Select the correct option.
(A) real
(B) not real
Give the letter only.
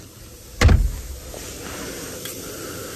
A